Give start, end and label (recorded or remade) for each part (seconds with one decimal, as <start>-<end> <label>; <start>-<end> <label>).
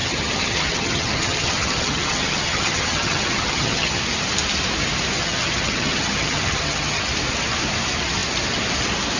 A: 0.0-4.0 remade; 4.0-5.2 recorded; 5.2-7.0 remade; 7.0-9.2 recorded